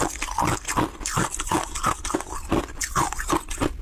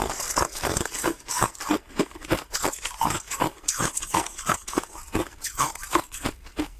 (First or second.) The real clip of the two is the first